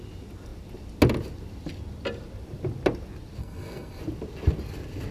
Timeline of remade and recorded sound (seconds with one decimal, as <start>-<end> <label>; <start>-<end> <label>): 0.0-3.4 recorded; 3.4-4.0 remade; 4.0-5.1 recorded